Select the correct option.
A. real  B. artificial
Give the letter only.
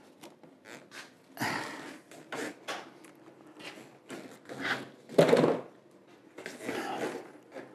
A